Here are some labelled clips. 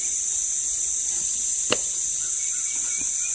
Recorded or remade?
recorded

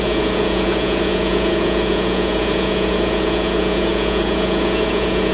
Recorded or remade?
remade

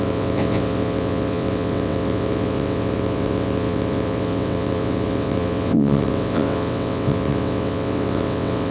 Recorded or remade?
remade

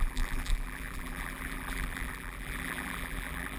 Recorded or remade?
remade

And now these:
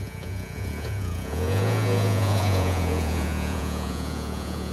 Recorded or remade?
remade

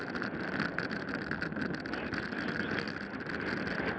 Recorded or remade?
recorded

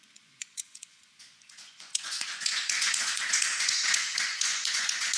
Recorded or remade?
remade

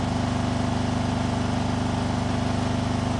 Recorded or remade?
recorded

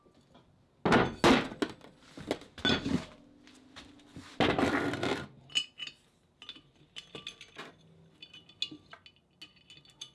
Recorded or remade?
recorded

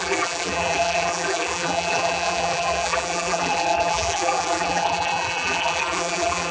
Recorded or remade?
remade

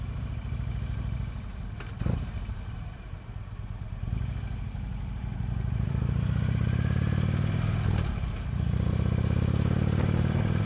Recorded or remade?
remade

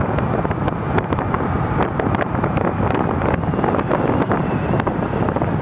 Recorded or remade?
recorded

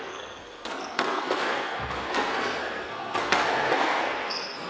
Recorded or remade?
remade